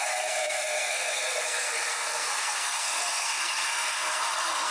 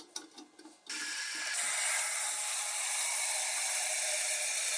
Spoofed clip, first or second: first